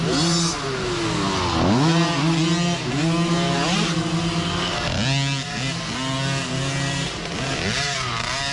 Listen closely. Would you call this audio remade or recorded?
recorded